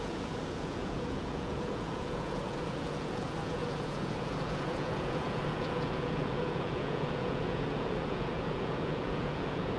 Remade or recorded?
remade